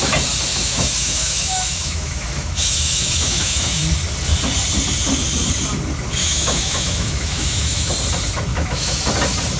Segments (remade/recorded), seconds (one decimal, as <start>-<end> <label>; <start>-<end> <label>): 0.0-0.5 recorded; 0.5-3.8 remade; 3.8-6.2 recorded; 6.2-7.9 remade; 7.9-8.5 recorded; 8.5-9.0 remade; 9.0-9.6 recorded